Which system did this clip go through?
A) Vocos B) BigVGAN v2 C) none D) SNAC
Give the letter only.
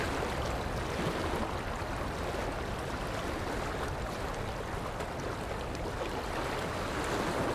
C